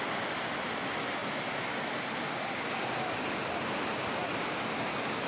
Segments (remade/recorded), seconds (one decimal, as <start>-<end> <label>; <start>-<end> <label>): 0.0-5.3 recorded